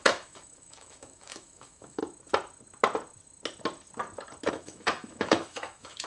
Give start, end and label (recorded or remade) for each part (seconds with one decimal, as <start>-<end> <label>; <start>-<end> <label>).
0.0-2.0 remade; 2.0-4.5 recorded; 4.5-6.1 remade